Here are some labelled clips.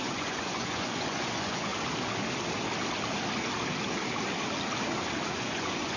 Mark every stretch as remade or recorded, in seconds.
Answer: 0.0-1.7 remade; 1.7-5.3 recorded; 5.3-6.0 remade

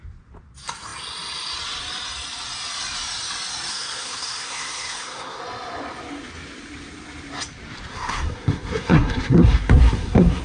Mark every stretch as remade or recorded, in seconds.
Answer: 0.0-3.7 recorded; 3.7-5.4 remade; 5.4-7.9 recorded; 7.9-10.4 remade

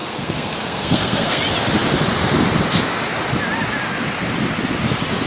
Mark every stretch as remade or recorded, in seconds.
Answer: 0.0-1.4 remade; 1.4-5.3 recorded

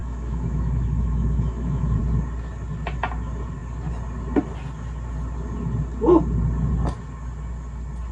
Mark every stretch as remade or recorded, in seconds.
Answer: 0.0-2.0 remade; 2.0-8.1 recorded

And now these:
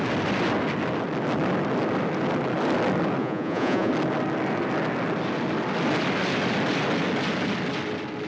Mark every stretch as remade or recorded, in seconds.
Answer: 0.0-3.2 recorded; 3.2-3.9 remade; 3.9-8.3 recorded